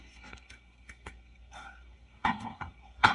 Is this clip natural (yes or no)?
no